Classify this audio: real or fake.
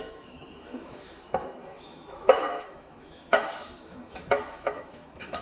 fake